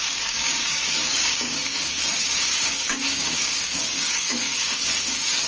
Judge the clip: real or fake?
fake